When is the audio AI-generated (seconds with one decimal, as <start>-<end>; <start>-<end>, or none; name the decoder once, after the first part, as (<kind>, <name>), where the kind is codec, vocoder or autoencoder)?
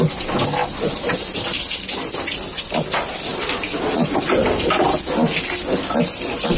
none